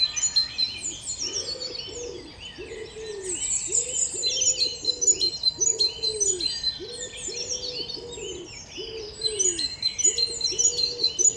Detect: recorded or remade recorded